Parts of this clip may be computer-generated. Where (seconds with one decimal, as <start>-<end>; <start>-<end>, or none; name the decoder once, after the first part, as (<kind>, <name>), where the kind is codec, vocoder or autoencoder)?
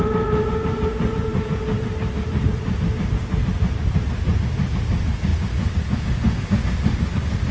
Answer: none